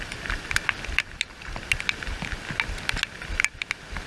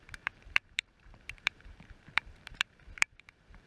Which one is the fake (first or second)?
second